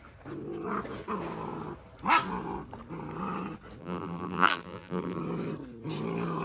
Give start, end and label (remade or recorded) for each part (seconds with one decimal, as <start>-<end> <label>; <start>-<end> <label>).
0.0-3.8 recorded; 3.8-5.2 remade; 5.2-6.4 recorded